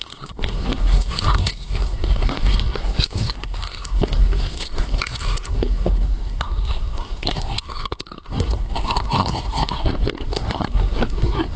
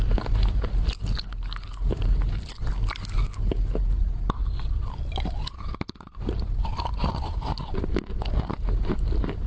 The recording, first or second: second